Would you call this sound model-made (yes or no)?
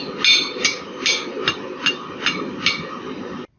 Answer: no